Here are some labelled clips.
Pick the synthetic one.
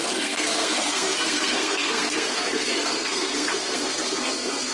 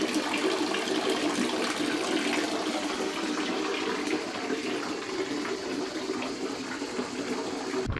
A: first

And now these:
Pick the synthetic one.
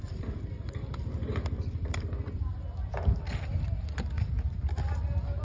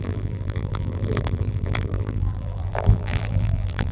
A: second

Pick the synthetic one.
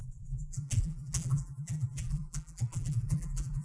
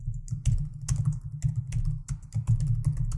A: first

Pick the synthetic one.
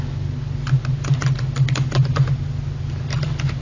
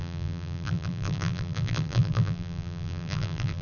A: second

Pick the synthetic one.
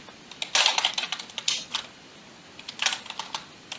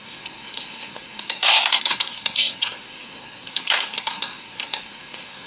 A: second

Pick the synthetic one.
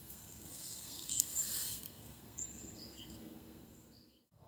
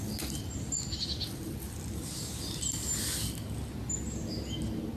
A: first